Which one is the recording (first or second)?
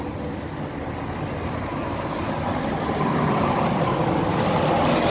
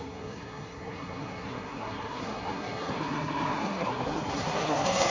first